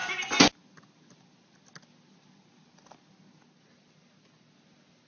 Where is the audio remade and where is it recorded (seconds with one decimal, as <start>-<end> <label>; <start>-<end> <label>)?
0.0-5.1 recorded